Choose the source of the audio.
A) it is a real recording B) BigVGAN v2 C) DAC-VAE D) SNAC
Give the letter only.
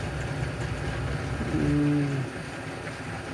A